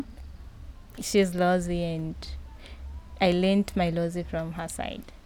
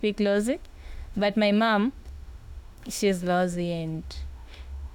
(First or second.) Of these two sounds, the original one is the first